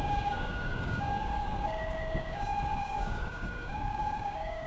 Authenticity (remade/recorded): remade